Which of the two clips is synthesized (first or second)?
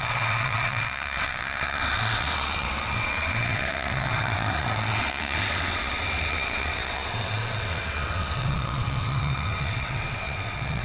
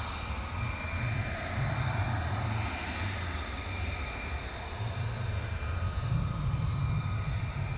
first